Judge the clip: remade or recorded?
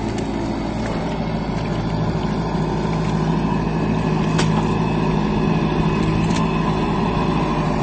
recorded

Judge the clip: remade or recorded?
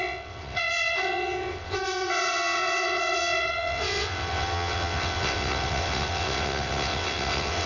remade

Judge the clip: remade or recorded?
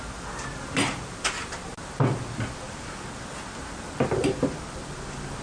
recorded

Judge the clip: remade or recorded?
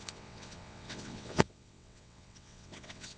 remade